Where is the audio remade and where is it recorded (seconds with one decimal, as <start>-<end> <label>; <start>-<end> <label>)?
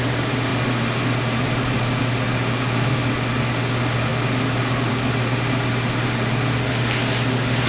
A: 0.0-7.7 recorded